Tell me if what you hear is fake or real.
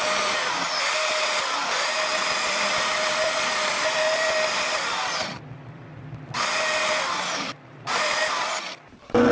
fake